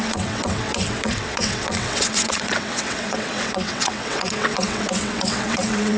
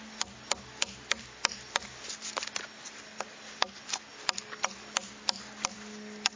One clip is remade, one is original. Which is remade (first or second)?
first